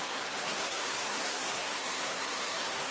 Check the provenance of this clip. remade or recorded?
remade